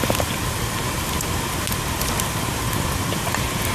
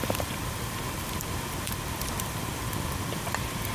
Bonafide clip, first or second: first